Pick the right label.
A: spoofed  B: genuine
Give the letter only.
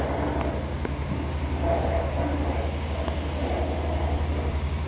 B